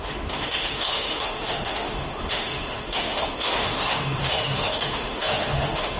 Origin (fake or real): fake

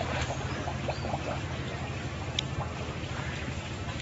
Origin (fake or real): real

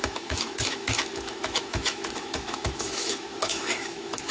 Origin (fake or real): fake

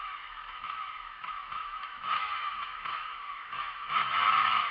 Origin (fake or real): fake